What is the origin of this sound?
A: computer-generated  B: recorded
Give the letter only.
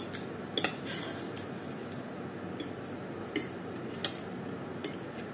B